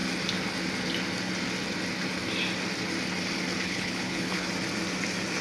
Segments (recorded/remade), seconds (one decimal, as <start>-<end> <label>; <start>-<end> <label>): 0.0-3.6 recorded; 3.6-4.5 remade; 4.5-5.4 recorded